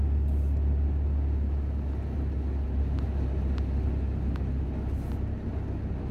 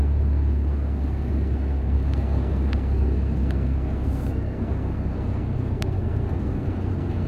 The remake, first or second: second